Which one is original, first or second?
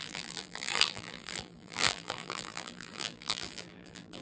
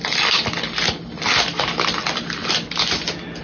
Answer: second